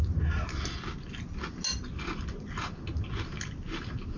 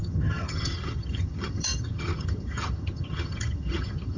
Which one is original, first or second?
first